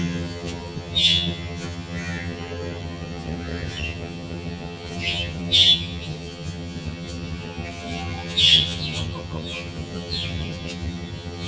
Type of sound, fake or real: fake